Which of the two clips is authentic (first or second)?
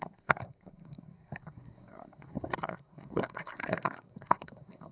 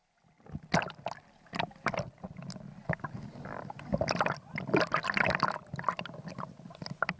second